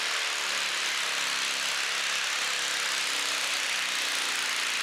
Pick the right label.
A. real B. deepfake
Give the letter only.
A